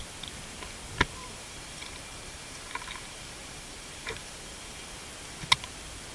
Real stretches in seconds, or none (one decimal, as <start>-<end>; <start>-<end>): 0.0-1.2; 4.9-6.1